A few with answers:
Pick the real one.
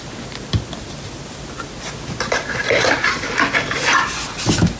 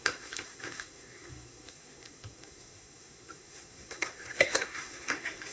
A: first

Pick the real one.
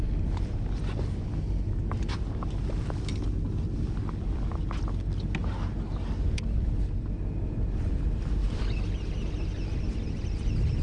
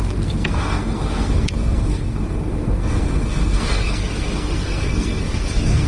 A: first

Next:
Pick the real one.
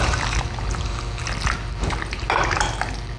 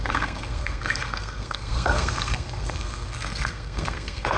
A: first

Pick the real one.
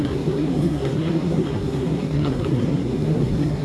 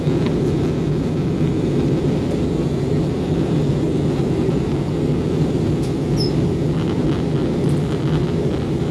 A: second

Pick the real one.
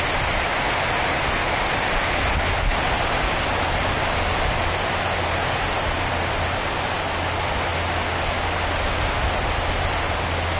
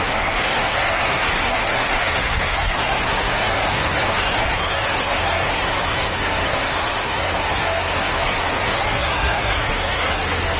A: first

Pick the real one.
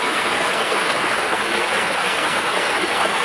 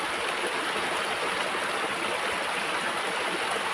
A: second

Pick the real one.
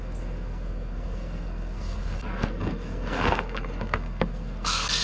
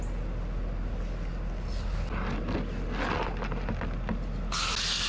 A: second